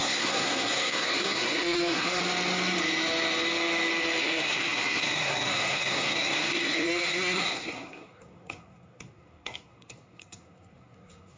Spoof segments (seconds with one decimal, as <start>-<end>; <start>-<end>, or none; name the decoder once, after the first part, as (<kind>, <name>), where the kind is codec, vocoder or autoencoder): 0.0-2.2 (codec, SNAC); 4.2-11.4